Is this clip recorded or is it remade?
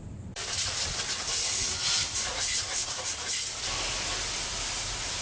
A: remade